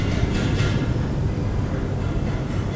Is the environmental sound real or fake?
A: real